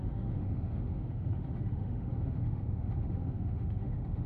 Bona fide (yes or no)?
no